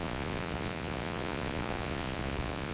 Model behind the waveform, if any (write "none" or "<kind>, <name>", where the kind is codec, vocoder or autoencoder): vocoder, Vocos